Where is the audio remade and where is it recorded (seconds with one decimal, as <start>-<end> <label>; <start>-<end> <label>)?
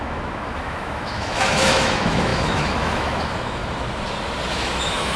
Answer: 0.0-3.6 remade; 3.6-4.5 recorded; 4.5-5.2 remade